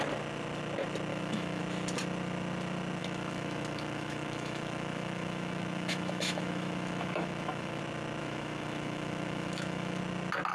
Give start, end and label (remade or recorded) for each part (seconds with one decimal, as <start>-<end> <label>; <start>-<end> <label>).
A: 0.0-1.1 recorded; 1.1-1.6 remade; 1.6-3.0 recorded; 3.0-7.8 remade; 7.8-8.2 recorded; 8.2-10.0 remade; 10.0-10.5 recorded